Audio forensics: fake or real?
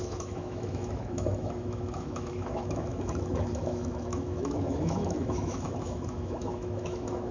fake